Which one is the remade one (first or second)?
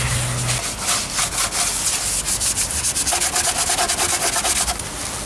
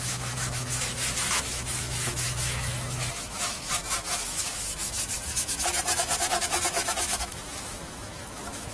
second